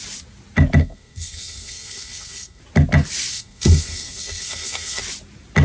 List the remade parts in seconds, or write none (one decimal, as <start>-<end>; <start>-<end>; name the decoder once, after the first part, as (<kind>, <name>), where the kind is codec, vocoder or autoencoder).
0.8-2.6 (codec, SNAC); 3.3-5.0